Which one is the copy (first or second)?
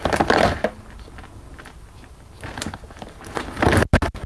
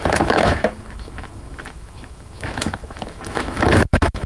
second